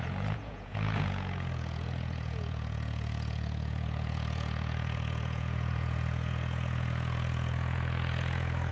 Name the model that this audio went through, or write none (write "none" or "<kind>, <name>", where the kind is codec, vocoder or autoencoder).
vocoder, Vocos